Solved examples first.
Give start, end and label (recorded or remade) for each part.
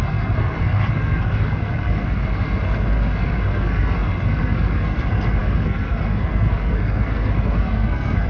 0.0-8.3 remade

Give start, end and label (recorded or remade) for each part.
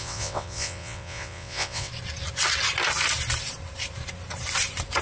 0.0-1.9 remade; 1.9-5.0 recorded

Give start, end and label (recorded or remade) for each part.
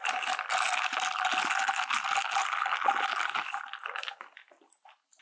0.0-5.2 recorded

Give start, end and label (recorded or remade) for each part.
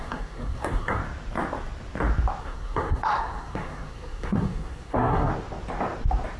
0.0-1.0 remade; 1.0-2.4 recorded; 2.4-5.3 remade; 5.3-6.4 recorded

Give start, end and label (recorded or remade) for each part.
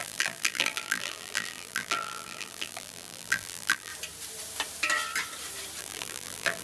0.0-3.9 remade; 3.9-5.8 recorded; 5.8-6.6 remade